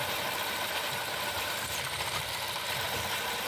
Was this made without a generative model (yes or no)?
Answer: yes